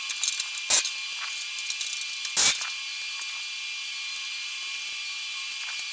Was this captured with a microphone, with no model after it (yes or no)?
yes